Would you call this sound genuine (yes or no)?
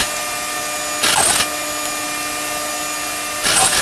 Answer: yes